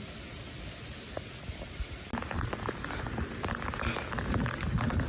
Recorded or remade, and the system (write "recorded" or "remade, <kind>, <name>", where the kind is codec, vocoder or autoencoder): recorded